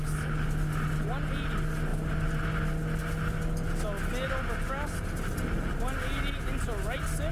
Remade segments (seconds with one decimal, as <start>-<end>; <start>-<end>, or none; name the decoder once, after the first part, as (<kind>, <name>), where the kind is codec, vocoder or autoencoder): none